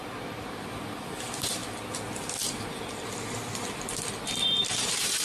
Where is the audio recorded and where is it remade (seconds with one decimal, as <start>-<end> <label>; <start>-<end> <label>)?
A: 0.0-1.6 remade; 1.6-4.7 recorded; 4.7-5.2 remade